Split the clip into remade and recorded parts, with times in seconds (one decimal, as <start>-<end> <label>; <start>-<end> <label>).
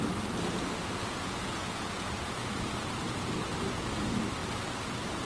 0.0-1.0 recorded; 1.0-2.5 remade; 2.5-5.2 recorded